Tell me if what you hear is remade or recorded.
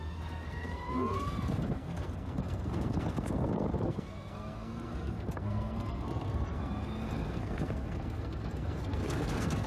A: remade